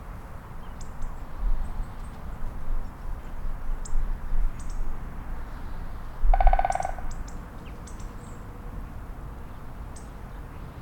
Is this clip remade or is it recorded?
recorded